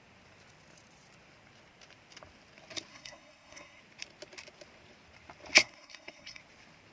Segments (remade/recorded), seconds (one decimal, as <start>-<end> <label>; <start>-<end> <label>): 0.0-2.9 recorded; 2.9-3.8 remade; 3.8-5.6 recorded; 5.6-6.4 remade; 6.4-6.9 recorded